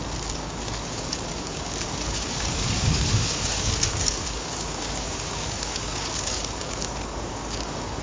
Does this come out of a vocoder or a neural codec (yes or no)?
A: yes